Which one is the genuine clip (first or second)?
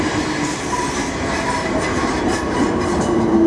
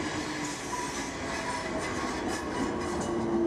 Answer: second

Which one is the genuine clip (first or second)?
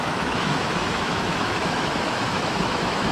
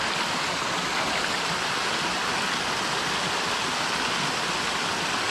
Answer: second